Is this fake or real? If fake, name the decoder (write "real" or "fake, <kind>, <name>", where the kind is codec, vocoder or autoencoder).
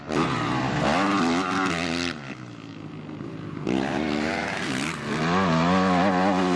real